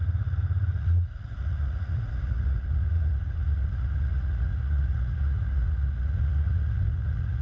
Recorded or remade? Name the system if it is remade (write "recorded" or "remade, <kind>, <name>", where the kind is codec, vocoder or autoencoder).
remade, vocoder, Vocos